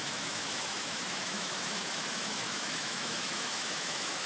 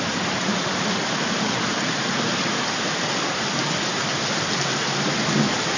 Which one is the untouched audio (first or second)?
second